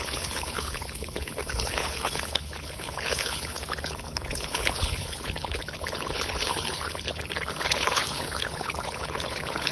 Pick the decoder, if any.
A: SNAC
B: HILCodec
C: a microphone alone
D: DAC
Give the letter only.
B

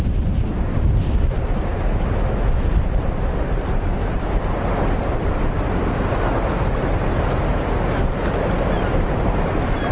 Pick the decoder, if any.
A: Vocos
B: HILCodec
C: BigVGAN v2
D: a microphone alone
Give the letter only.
D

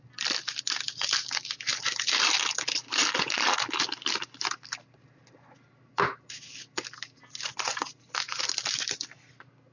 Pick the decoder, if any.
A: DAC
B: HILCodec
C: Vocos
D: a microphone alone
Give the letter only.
D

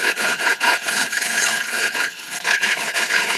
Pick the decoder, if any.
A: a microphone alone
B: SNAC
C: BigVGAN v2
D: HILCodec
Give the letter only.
D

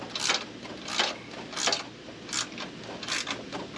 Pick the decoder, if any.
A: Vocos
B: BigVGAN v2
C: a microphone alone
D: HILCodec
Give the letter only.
C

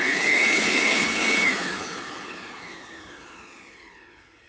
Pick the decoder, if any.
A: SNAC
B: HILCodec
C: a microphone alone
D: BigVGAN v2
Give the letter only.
B